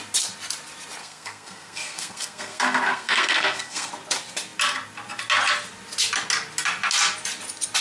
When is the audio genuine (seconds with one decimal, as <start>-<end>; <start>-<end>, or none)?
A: 0.0-1.0; 3.9-7.8